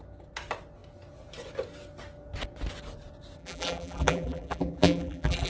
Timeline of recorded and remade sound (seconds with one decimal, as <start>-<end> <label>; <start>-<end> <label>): 0.0-3.4 recorded; 3.4-5.5 remade